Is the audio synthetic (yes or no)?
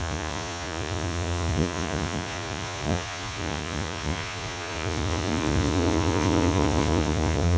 yes